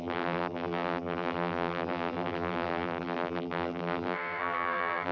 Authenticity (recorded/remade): remade